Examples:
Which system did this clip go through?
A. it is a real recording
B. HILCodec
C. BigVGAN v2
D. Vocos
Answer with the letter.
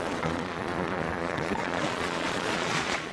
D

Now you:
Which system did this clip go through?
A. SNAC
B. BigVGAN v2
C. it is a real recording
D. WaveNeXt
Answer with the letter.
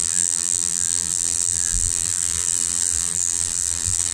B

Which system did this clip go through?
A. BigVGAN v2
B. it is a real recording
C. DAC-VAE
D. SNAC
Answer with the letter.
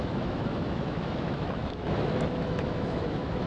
C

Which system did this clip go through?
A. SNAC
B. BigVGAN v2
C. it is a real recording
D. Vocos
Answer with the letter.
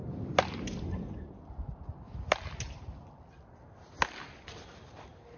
C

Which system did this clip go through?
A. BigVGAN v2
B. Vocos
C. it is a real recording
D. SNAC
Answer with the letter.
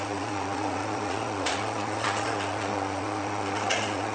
B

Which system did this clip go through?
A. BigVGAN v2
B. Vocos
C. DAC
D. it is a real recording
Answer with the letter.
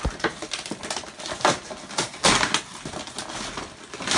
D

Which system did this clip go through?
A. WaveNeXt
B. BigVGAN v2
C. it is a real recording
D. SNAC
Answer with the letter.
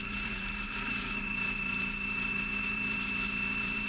B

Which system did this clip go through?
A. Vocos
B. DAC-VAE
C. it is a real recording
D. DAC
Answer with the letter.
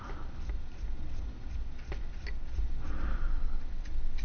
C